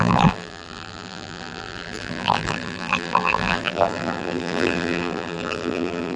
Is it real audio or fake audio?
fake